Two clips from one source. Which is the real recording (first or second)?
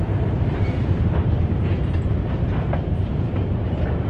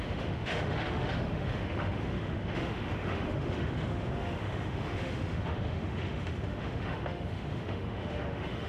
first